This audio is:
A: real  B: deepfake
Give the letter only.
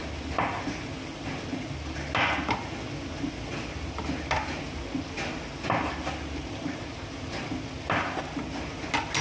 A